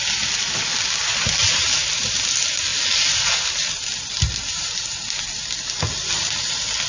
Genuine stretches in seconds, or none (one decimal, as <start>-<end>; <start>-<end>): 0.0-6.9